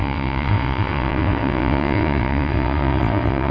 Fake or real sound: fake